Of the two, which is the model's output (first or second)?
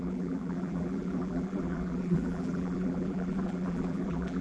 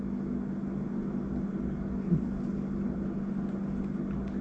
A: first